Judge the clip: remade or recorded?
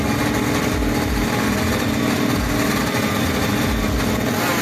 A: recorded